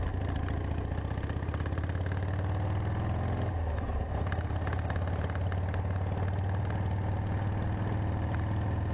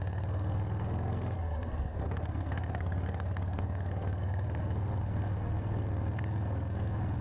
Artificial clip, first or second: second